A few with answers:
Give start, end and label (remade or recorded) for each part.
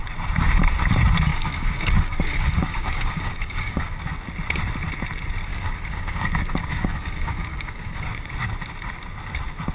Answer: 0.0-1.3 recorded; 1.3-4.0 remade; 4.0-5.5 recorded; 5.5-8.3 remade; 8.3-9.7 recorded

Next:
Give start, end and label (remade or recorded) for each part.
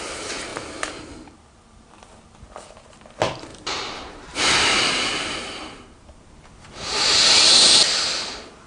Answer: 0.0-3.5 recorded; 3.5-5.1 remade; 5.1-8.7 recorded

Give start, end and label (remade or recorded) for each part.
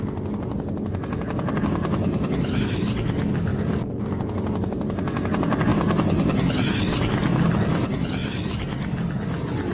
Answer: 0.0-9.7 recorded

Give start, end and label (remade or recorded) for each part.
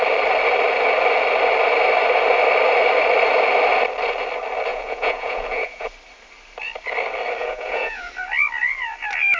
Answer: 0.0-4.7 recorded; 4.7-5.9 remade; 5.9-7.4 recorded; 7.4-8.1 remade; 8.1-9.4 recorded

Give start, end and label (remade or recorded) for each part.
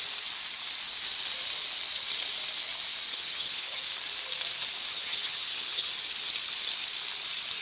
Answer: 0.0-3.1 recorded; 3.1-3.8 remade; 3.8-4.9 recorded; 4.9-5.9 remade; 5.9-7.6 recorded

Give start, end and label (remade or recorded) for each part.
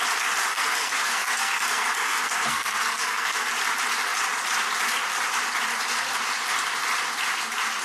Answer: 0.0-0.5 recorded; 0.5-3.5 remade; 3.5-7.8 recorded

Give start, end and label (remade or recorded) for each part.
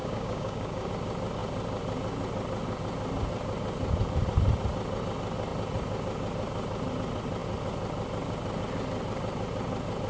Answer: 0.0-0.9 remade; 0.9-10.1 recorded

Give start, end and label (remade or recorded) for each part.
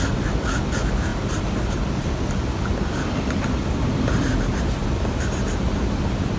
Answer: 0.0-6.4 recorded